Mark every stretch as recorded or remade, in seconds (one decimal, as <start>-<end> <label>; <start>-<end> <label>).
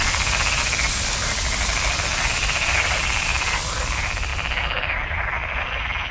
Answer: 0.0-6.1 recorded